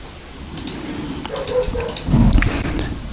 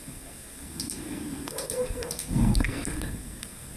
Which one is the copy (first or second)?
second